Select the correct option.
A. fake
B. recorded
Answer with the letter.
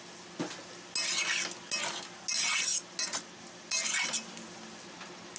B